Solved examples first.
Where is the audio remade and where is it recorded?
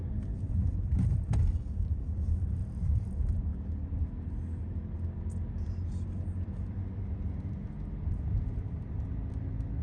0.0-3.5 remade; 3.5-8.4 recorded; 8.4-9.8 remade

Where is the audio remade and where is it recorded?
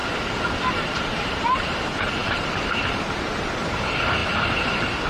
0.0-0.7 recorded; 0.7-5.1 remade